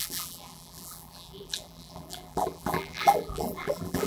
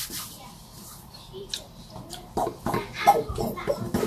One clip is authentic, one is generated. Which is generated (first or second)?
first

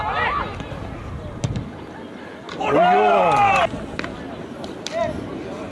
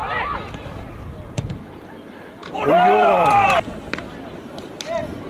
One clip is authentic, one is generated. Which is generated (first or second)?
second